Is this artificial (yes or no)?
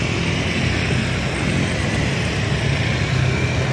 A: no